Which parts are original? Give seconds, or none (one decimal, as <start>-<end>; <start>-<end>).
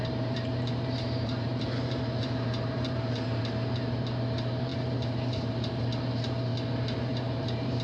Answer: 6.5-7.1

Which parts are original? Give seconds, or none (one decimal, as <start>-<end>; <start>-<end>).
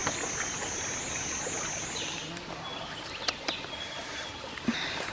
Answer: 0.0-5.1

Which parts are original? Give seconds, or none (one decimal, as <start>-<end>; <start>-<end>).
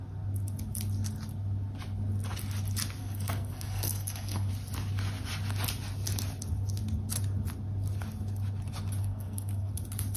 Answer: 0.0-3.0; 4.5-9.0; 9.7-10.2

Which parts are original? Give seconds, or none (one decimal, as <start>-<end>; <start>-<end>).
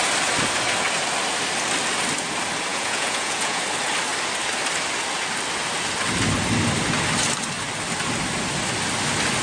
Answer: 0.0-2.7; 3.6-9.4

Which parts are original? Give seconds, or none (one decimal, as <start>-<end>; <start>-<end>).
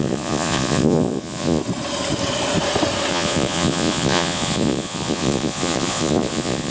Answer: 1.6-3.1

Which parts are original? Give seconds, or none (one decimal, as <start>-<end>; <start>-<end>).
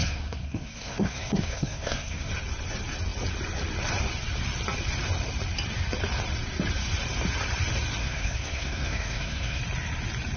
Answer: 2.3-8.0; 9.6-10.4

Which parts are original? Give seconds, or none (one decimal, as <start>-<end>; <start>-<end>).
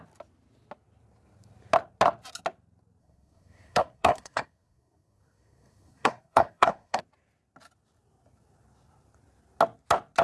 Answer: 0.0-3.0; 7.0-10.2